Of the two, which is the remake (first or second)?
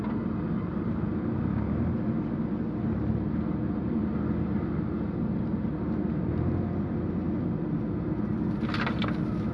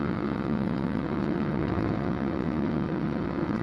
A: second